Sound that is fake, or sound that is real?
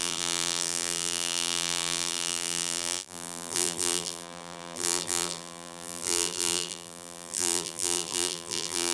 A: fake